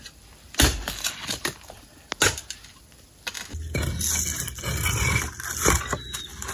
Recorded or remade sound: recorded